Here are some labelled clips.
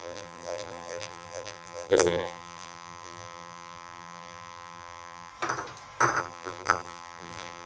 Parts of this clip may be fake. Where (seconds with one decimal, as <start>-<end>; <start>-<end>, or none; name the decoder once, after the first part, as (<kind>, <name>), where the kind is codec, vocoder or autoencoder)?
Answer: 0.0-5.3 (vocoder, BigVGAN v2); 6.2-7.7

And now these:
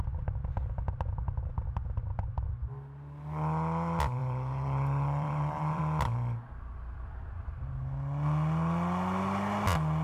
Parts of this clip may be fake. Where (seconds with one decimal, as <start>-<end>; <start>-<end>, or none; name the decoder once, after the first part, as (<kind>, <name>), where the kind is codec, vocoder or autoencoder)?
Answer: 4.2-5.8 (vocoder, BigVGAN v2)

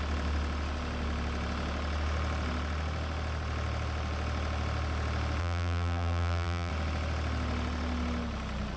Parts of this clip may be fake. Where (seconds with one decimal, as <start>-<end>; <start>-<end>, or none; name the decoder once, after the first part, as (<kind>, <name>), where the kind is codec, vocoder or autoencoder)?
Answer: 5.4-6.7 (vocoder, BigVGAN v2)

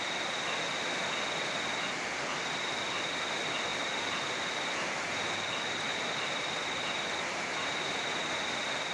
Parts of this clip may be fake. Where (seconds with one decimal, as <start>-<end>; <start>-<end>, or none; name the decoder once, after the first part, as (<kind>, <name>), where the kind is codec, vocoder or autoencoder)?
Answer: 3.7-4.4 (vocoder, BigVGAN v2); 5.9-6.4; 7.3-8.0

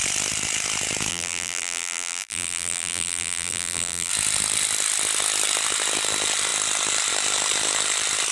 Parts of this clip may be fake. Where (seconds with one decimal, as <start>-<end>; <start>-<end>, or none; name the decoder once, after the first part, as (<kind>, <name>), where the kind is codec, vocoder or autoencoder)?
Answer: 1.1-4.1 (vocoder, BigVGAN v2)